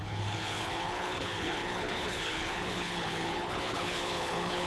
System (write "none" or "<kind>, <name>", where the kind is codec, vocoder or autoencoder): codec, HILCodec